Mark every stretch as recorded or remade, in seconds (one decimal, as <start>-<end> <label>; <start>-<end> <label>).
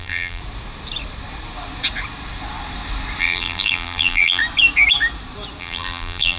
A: 0.0-0.4 remade; 0.4-3.2 recorded; 3.2-4.4 remade; 4.4-5.6 recorded; 5.6-6.4 remade